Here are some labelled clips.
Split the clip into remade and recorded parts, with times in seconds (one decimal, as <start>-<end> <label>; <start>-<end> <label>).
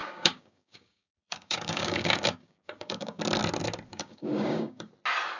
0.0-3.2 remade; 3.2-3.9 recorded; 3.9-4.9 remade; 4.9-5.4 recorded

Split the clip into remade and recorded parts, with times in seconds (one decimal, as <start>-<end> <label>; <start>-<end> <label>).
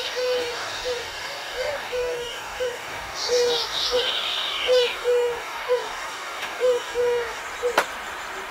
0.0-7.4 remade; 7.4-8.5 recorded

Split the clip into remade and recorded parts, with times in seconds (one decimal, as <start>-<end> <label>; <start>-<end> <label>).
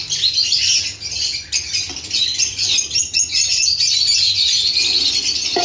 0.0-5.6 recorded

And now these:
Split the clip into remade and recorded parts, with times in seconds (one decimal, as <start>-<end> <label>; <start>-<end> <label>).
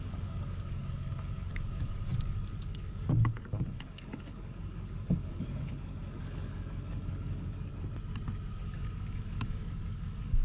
0.0-7.7 remade; 7.7-8.5 recorded; 8.5-10.4 remade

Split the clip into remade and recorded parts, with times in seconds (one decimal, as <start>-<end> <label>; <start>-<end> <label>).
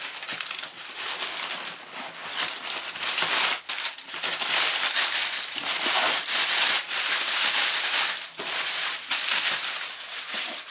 0.0-10.7 recorded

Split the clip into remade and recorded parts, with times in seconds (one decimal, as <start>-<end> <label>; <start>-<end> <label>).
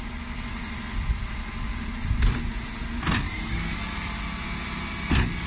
0.0-3.3 recorded; 3.3-4.1 remade; 4.1-5.5 recorded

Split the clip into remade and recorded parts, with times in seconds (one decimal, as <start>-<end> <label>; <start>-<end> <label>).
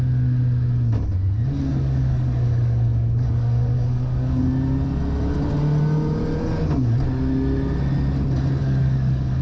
0.0-1.7 recorded; 1.7-4.4 remade; 4.4-8.6 recorded; 8.6-9.4 remade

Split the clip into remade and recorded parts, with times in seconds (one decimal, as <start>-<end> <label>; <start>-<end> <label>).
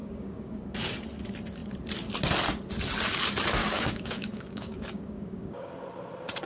0.0-0.6 remade; 0.6-3.6 recorded; 3.6-5.7 remade; 5.7-6.5 recorded